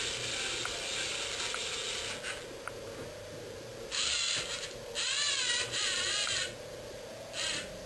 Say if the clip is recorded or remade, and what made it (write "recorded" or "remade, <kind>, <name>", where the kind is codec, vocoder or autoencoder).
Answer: recorded